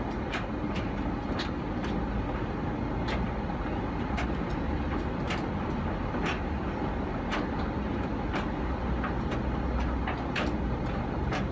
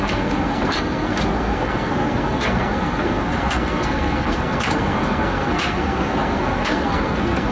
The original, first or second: first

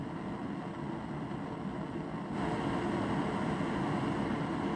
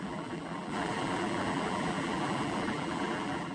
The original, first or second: first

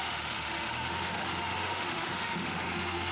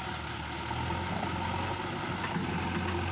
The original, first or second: second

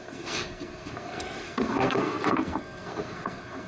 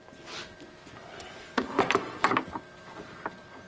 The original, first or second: second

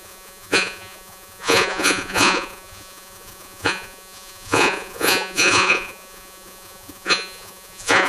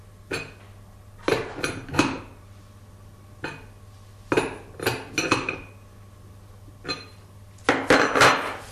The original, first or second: second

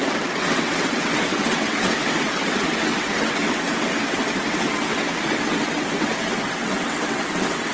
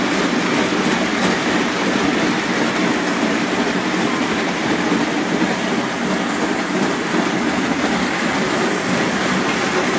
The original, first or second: second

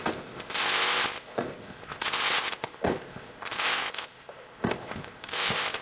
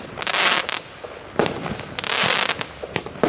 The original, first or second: second